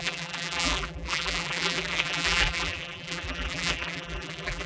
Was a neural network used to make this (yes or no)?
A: yes